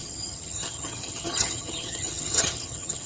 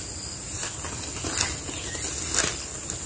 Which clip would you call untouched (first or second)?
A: second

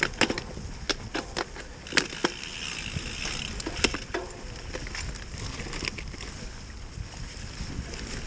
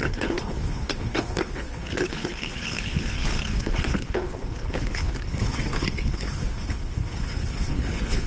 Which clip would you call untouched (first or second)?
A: first